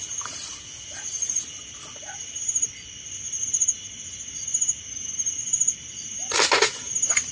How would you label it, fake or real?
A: real